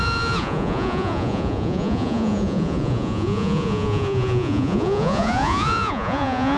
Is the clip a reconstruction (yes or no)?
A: yes